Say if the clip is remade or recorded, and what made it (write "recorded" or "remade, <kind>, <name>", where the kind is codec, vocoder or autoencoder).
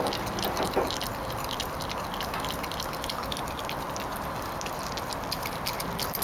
recorded